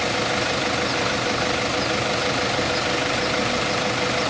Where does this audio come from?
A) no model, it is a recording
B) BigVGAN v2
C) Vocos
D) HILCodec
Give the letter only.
A